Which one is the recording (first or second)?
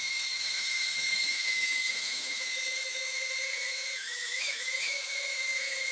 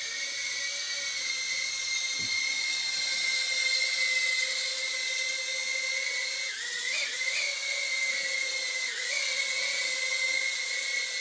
second